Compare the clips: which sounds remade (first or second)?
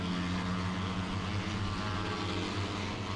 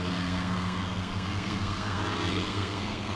second